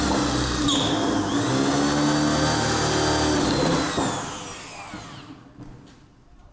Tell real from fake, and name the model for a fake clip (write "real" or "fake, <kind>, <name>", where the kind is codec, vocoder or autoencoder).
real